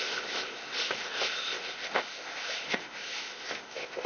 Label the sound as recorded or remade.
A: remade